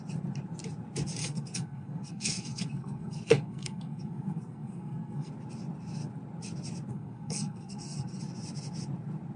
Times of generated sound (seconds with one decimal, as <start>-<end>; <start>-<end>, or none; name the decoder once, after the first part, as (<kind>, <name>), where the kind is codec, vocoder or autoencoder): 1.2-5.3 (codec, SNAC); 6.9-8.2